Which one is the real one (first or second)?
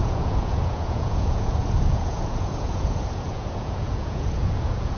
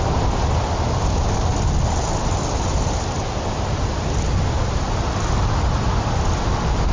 second